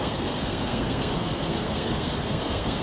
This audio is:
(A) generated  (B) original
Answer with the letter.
A